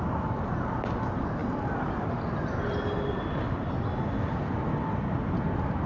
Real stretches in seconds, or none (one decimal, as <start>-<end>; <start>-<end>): 0.0-1.4; 3.9-5.9